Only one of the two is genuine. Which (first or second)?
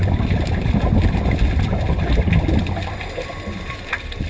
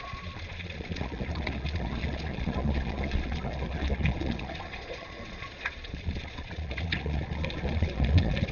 first